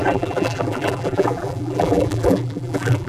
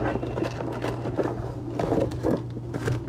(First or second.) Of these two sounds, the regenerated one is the first